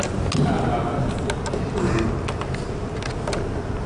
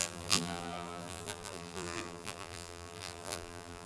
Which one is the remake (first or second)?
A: second